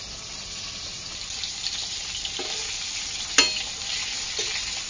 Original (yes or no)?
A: yes